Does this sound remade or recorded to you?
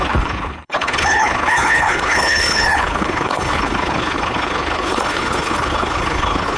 remade